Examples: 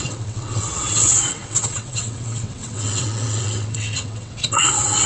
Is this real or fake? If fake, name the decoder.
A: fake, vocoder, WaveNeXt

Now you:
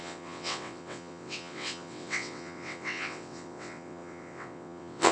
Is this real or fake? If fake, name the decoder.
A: fake, vocoder, WaveNeXt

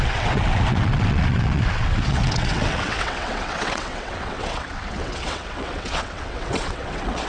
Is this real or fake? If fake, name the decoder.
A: fake, vocoder, WaveNeXt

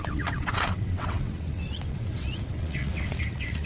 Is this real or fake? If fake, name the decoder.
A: fake, vocoder, WaveNeXt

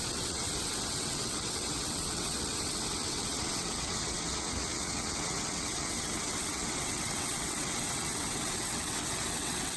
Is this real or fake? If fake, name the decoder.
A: fake, vocoder, WaveNeXt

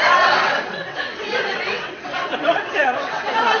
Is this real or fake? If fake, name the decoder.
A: fake, vocoder, WaveNeXt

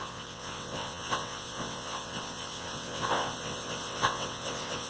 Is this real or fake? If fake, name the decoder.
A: fake, vocoder, WaveNeXt